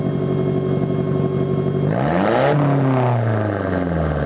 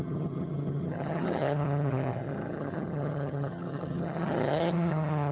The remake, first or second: second